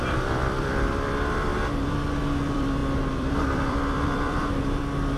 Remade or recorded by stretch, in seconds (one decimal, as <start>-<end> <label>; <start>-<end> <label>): 0.0-1.5 remade; 1.5-2.1 recorded; 2.1-5.2 remade